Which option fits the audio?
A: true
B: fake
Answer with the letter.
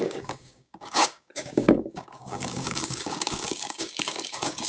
B